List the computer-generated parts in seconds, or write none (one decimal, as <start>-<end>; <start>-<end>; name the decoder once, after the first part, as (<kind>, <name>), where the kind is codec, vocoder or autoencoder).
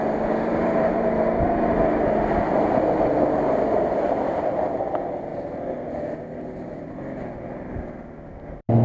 none